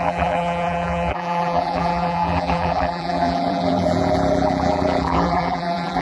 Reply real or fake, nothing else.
fake